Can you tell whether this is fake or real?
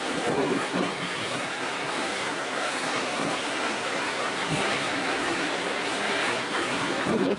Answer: fake